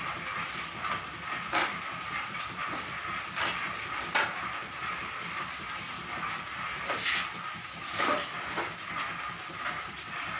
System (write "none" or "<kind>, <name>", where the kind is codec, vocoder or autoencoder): vocoder, BigVGAN v2